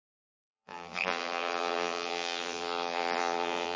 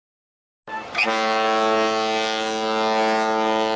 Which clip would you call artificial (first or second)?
first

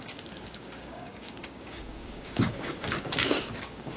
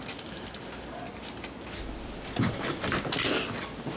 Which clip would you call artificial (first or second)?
first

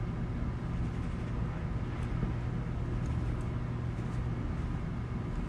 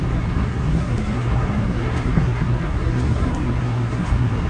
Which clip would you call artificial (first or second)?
second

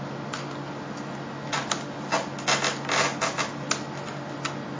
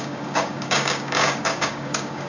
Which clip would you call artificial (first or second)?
second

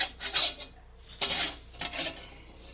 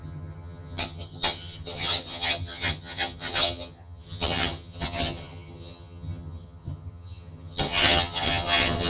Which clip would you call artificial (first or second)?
second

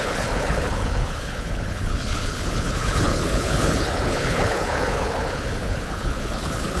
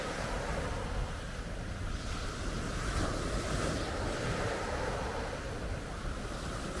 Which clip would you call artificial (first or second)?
first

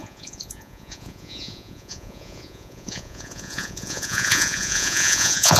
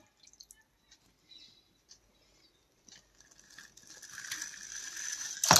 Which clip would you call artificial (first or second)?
first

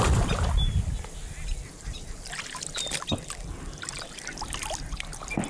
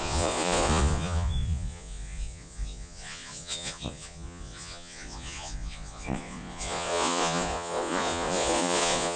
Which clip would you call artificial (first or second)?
second